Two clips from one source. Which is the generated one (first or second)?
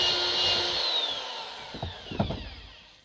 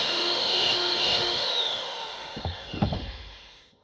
second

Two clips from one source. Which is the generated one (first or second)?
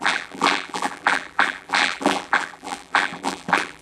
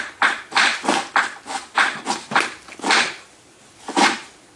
first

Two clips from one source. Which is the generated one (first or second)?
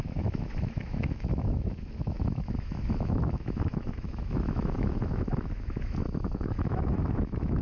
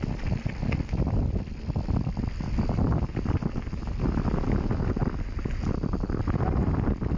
first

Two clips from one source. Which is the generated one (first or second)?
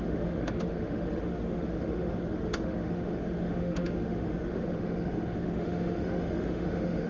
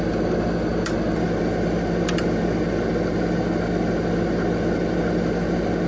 first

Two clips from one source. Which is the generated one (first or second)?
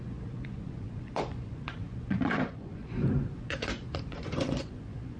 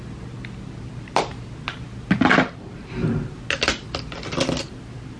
first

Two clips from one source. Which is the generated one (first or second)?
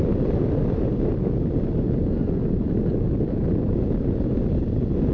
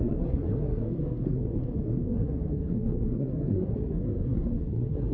second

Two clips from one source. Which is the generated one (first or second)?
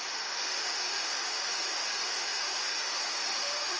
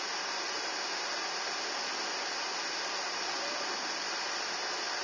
first